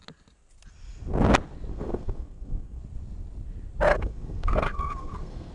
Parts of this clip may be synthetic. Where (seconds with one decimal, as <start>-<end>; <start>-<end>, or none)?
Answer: 1.7-2.8; 3.9-5.5